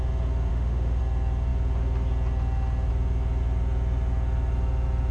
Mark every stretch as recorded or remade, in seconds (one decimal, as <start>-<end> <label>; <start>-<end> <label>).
0.0-0.5 recorded; 0.5-1.0 remade; 1.0-5.1 recorded